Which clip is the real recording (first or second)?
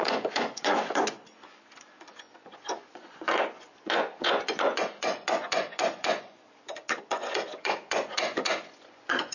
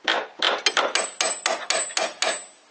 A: second